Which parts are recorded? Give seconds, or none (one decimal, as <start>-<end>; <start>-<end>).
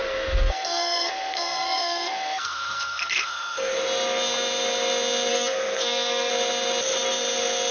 3.7-5.3; 6.3-7.7